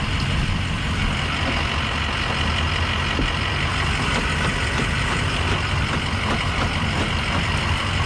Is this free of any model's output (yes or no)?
yes